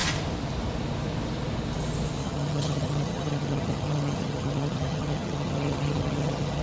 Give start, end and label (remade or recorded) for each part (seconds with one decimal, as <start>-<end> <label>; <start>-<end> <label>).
0.0-2.2 recorded; 2.2-6.6 remade